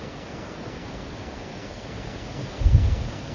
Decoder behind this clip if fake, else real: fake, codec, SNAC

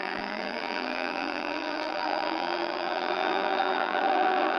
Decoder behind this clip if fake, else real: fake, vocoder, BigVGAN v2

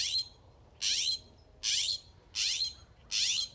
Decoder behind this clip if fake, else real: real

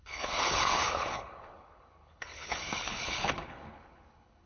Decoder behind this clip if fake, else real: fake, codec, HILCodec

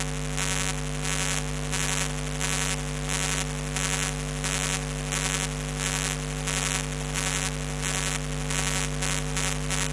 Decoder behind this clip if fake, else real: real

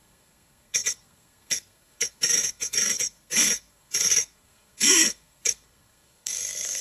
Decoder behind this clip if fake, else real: fake, codec, SNAC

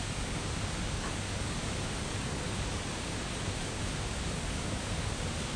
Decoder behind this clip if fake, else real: fake, codec, DAC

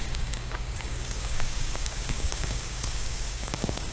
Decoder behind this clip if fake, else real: fake, codec, DAC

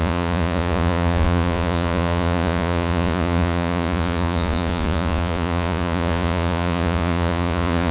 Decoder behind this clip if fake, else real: fake, vocoder, Vocos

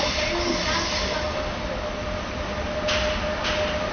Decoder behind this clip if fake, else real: real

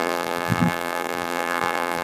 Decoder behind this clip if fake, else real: fake, vocoder, BigVGAN v2